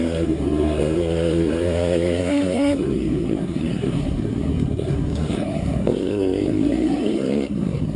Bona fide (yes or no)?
no